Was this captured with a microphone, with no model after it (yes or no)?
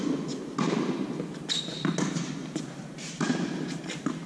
yes